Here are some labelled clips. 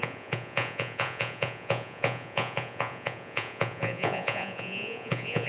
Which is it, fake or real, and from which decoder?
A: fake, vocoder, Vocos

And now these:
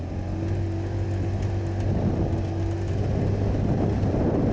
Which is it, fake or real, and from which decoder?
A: real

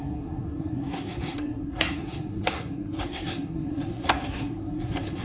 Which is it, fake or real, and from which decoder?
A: fake, codec, SNAC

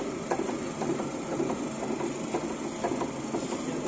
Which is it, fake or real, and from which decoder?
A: real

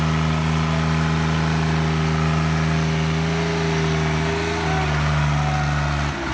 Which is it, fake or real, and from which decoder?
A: real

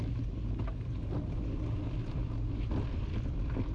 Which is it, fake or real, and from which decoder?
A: real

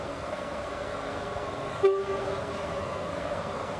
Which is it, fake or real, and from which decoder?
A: fake, codec, SNAC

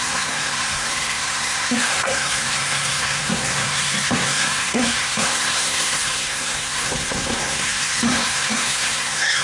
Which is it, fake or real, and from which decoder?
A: fake, codec, SNAC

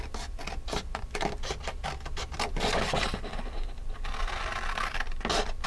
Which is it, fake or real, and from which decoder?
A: real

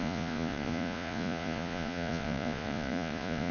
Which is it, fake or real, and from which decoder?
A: fake, vocoder, Vocos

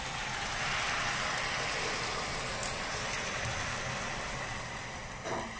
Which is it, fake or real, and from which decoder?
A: real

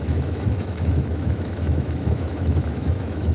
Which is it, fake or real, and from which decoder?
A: fake, autoencoder, DAC-VAE